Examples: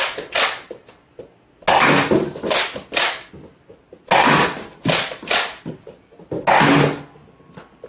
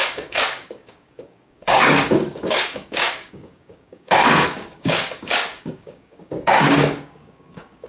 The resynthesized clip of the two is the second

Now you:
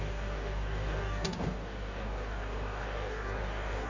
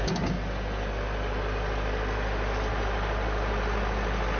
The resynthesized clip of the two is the first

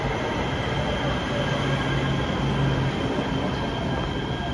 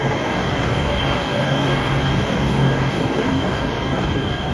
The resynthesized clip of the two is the second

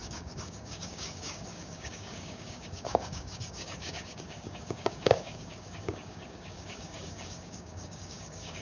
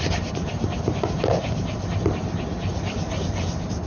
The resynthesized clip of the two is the first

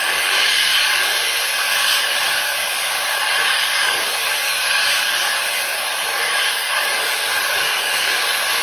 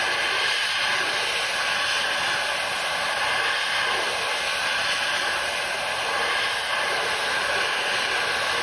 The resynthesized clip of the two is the first